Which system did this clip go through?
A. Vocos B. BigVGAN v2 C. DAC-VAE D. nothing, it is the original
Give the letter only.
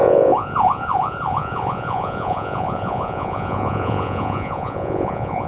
A